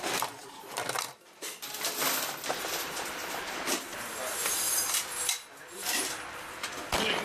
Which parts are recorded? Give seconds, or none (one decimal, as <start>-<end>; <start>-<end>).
3.9-4.5; 5.0-5.6